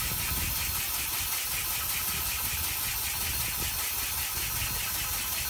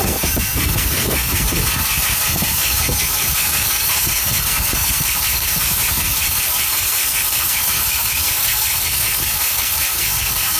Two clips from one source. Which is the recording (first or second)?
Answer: first